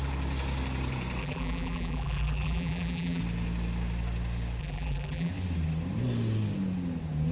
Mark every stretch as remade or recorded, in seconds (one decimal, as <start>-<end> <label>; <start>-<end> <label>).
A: 0.0-1.2 recorded; 1.2-3.2 remade; 3.2-4.6 recorded; 4.6-5.3 remade; 5.3-7.3 recorded

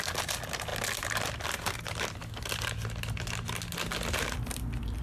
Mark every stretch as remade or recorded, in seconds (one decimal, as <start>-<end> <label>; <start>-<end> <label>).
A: 0.0-5.0 recorded

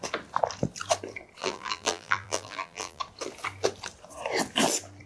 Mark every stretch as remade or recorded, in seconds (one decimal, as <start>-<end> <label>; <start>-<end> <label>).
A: 0.0-1.4 recorded; 1.4-3.0 remade; 3.0-5.1 recorded

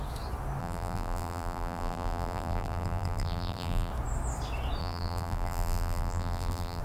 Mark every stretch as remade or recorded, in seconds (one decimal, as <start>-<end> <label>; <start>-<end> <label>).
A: 0.0-0.6 recorded; 0.6-3.9 remade; 3.9-4.8 recorded; 4.8-6.8 remade

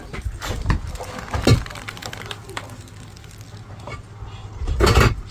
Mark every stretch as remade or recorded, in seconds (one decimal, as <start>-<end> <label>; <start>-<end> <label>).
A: 0.0-5.3 recorded